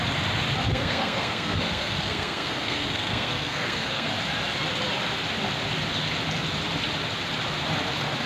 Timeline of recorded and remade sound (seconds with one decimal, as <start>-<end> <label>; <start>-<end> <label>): 0.0-0.7 recorded; 0.7-4.1 remade; 4.1-8.3 recorded